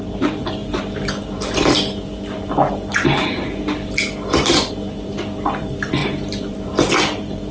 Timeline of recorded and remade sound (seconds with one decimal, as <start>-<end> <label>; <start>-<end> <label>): 0.0-0.6 remade; 0.6-4.7 recorded; 4.7-7.5 remade